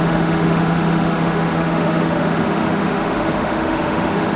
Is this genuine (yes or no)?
no